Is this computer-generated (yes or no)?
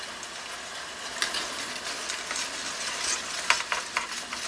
no